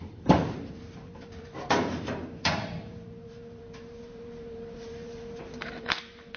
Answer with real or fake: fake